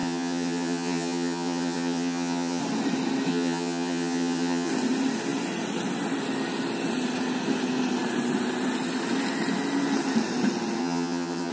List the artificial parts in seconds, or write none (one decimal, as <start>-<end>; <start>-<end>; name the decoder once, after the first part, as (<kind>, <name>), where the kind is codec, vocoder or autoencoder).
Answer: 0.0-2.6 (vocoder, HiFi-GAN); 3.3-4.7; 10.8-11.5